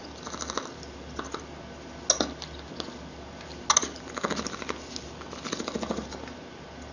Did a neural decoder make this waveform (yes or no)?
no